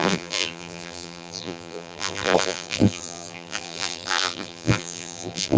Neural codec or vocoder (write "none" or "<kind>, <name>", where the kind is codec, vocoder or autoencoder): vocoder, BigVGAN v2